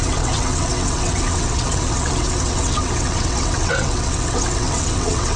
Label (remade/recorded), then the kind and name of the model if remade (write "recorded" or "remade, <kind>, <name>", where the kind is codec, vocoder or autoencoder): remade, vocoder, WaveNeXt